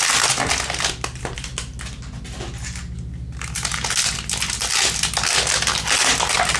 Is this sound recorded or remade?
recorded